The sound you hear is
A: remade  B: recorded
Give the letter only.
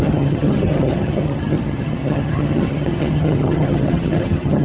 A